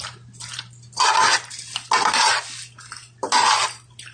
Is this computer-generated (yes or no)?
no